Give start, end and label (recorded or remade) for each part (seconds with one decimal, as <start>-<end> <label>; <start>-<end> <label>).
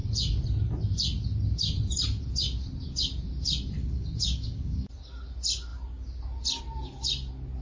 0.0-3.8 recorded; 3.8-4.9 remade; 4.9-7.6 recorded